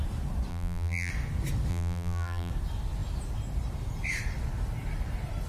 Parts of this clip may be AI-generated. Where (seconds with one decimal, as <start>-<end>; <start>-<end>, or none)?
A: 0.5-1.1; 1.7-2.5